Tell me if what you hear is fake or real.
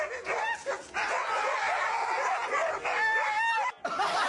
real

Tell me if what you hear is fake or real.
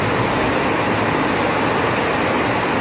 real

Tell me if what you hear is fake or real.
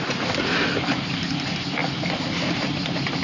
real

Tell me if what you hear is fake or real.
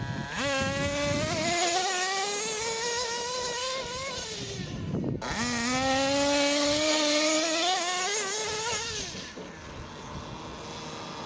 real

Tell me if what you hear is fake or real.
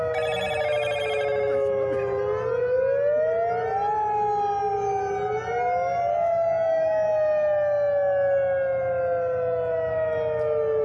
real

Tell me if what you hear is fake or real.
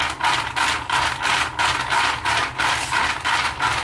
real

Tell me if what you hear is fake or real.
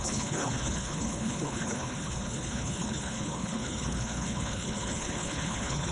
fake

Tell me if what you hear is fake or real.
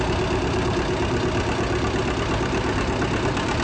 real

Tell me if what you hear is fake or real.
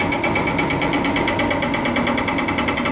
real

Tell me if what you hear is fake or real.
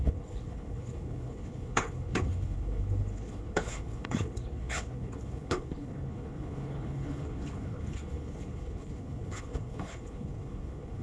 fake